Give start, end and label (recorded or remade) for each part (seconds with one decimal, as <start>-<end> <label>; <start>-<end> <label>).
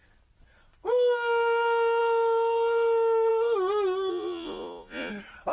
0.0-4.1 recorded; 4.1-5.1 remade; 5.1-5.5 recorded